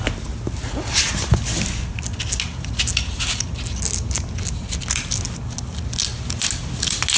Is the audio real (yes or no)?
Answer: yes